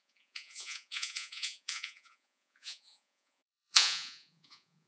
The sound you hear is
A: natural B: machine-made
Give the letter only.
B